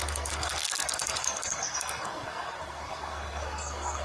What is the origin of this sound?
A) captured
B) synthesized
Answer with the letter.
B